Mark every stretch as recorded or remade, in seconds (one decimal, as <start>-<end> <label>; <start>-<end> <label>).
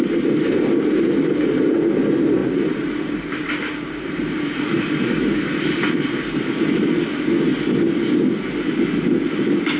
0.0-2.4 recorded; 2.4-7.0 remade; 7.0-9.8 recorded